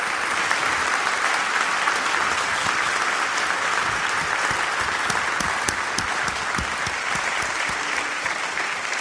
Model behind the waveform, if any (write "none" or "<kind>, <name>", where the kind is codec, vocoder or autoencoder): none